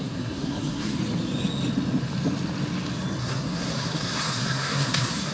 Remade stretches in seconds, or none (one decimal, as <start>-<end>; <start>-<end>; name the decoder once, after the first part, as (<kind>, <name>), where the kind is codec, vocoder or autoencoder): 0.0-1.0 (codec, SNAC); 3.2-5.3